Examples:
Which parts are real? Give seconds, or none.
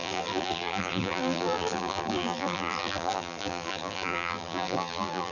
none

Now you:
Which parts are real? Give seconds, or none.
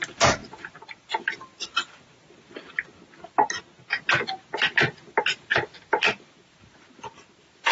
0.0-7.7